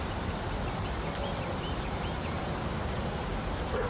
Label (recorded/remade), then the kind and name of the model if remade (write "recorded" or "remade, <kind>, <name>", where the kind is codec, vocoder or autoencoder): recorded